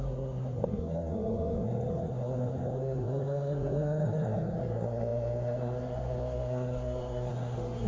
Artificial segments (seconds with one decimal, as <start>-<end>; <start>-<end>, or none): 0.0-7.9